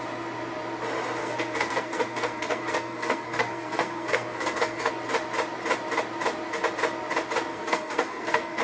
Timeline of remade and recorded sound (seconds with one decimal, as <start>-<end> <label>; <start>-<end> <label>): 0.0-1.2 recorded; 1.2-4.9 remade; 4.9-7.5 recorded; 7.5-8.6 remade